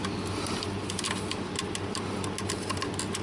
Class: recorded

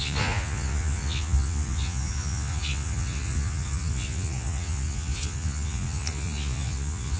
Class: remade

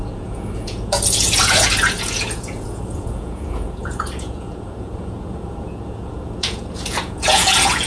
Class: remade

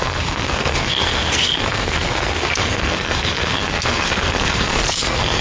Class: remade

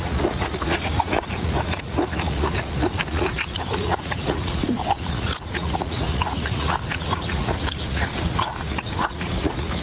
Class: remade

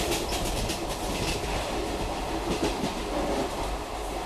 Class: recorded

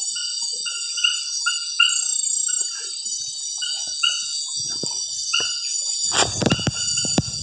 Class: recorded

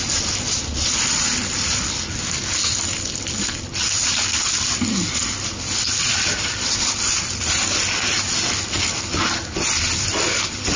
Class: recorded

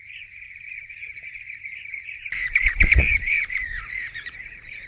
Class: remade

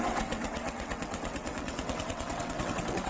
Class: remade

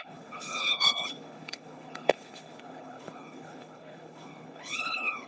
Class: remade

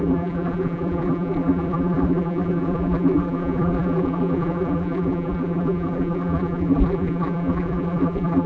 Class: remade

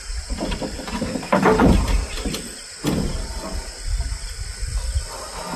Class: recorded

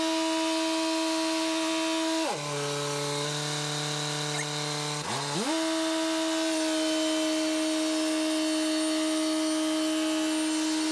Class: recorded